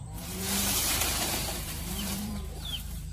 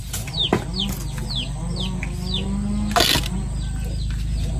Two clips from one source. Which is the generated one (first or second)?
first